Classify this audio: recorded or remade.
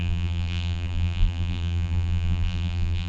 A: remade